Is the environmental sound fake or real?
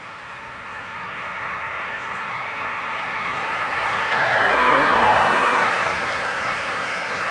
fake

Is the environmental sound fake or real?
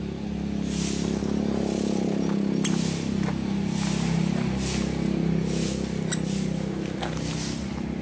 real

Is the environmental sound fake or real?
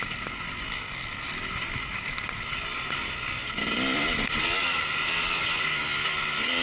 real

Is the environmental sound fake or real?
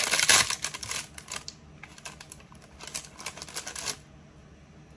real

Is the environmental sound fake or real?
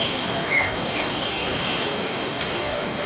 fake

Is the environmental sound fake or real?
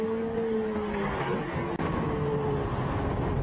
real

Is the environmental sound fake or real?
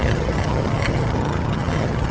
fake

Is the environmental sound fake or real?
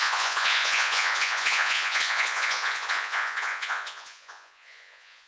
fake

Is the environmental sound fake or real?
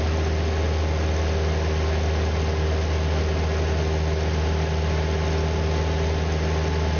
real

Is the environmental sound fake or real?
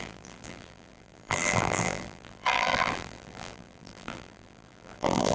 fake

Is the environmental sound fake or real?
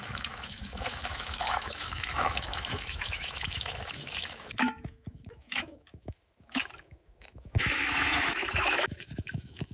fake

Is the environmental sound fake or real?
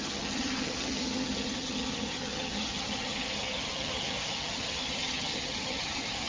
fake